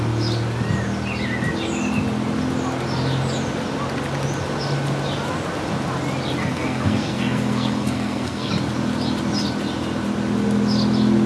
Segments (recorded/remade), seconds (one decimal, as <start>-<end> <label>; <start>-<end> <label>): 0.0-6.4 recorded; 6.4-8.5 remade; 8.5-11.3 recorded